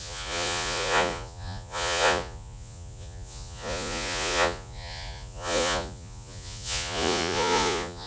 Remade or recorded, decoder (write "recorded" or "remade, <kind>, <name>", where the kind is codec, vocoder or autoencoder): remade, vocoder, Vocos